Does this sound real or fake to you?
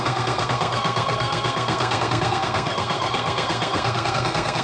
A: fake